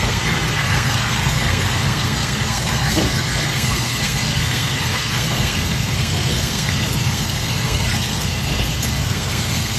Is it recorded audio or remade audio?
remade